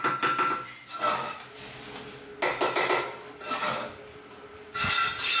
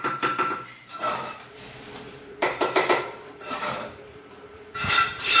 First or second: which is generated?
second